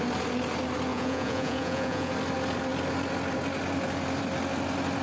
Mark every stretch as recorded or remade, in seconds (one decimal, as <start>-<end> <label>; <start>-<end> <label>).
0.0-0.9 recorded; 0.9-2.1 remade; 2.1-5.0 recorded